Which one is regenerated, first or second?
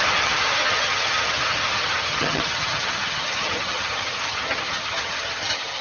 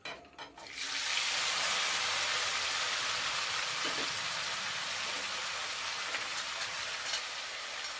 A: first